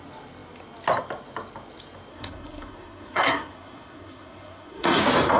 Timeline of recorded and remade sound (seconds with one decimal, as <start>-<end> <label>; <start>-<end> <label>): 0.0-2.1 recorded; 2.1-5.0 remade; 5.0-5.4 recorded